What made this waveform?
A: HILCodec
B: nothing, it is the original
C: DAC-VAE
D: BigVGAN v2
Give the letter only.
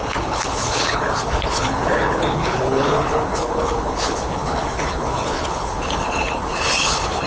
A